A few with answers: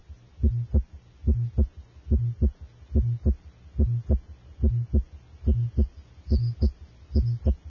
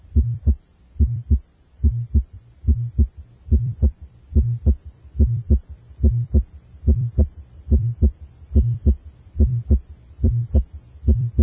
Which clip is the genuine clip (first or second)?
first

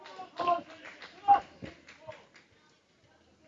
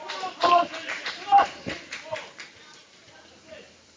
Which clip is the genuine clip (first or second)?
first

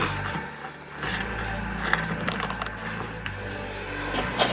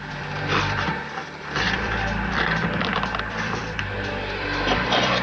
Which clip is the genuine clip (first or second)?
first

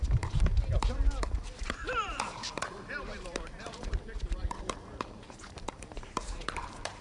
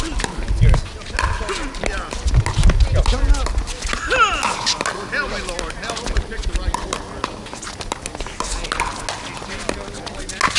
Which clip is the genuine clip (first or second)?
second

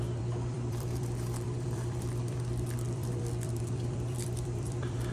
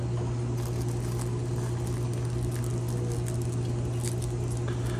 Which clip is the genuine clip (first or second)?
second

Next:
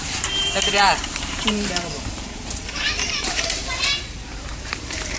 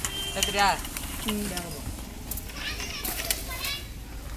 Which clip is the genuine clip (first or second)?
second